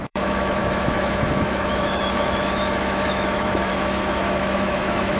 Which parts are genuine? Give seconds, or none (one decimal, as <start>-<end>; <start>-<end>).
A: none